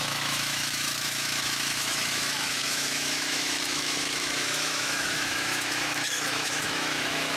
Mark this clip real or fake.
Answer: fake